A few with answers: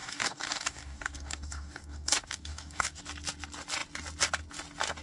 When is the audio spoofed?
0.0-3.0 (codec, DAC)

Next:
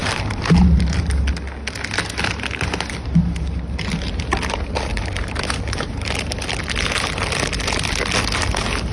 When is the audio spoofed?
0.0-1.1 (vocoder, BigVGAN v2); 3.2-4.2; 4.9-6.1

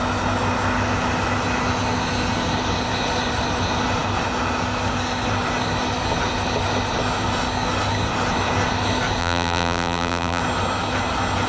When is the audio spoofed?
9.2-10.4 (vocoder, BigVGAN v2)

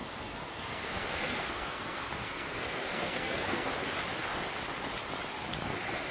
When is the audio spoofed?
0.0-3.7 (codec, SNAC)

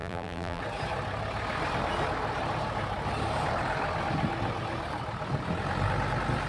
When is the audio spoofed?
0.0-0.6 (vocoder, BigVGAN v2)